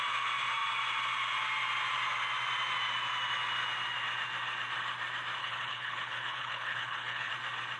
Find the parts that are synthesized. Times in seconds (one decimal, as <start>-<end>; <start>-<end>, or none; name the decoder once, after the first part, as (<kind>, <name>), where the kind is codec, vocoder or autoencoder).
5.4-7.3 (codec, HILCodec)